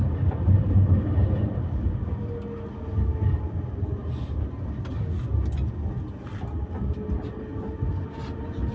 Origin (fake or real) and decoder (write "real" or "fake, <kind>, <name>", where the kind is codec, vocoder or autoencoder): real